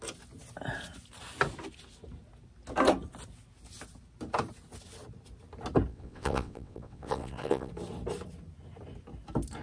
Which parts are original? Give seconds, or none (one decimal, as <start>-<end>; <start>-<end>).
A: 0.0-5.9; 7.7-9.6